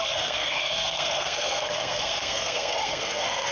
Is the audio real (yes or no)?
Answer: no